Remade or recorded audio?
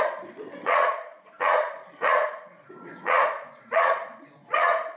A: remade